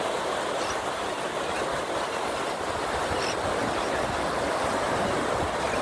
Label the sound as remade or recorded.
recorded